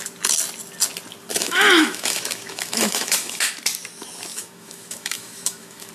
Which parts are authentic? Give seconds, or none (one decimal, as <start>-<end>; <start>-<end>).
0.0-1.3; 3.5-4.3

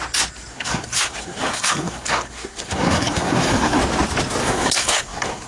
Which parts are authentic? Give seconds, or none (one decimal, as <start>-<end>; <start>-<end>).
0.0-0.5; 3.8-4.4

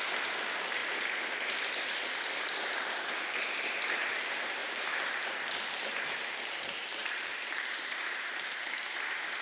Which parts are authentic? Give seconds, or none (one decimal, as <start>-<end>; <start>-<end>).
0.0-4.6; 5.9-7.0; 8.5-9.4

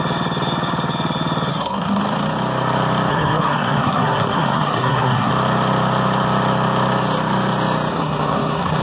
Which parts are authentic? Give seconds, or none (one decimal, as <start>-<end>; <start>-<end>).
0.0-1.5; 2.0-3.1; 5.3-7.9

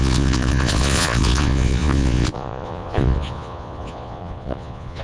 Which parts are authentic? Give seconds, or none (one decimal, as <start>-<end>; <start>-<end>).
none